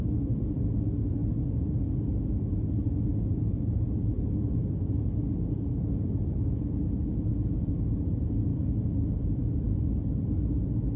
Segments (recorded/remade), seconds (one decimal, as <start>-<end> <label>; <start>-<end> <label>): 0.0-11.0 recorded